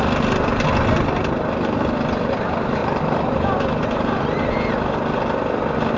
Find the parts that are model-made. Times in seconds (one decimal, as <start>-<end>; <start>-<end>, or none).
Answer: 2.8-4.7